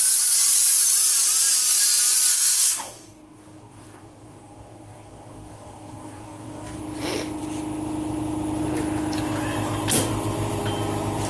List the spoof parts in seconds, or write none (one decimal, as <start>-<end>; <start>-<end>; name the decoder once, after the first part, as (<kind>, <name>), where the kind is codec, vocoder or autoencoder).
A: 2.3-6.8 (codec, DAC)